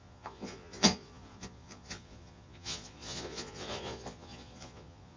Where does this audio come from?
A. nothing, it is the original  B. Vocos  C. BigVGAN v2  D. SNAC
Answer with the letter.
B